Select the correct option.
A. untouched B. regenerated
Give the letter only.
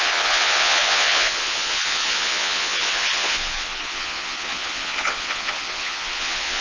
B